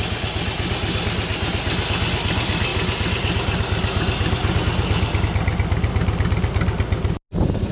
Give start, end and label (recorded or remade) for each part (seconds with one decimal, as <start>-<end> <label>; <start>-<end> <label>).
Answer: 0.0-7.7 recorded